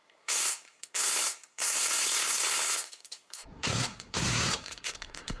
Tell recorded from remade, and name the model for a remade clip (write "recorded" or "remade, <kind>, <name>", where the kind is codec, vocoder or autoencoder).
remade, codec, SNAC